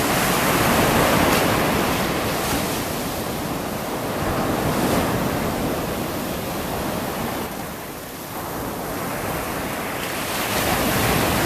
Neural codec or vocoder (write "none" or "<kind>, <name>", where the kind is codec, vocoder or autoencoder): vocoder, BigVGAN v2